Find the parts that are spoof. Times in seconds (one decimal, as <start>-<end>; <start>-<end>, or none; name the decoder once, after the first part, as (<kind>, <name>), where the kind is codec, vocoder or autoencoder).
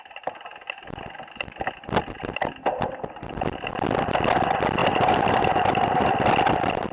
4.8-6.1 (vocoder, BigVGAN v2)